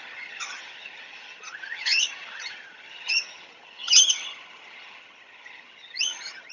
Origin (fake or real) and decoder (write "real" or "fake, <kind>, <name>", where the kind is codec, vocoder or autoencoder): fake, vocoder, HiFi-GAN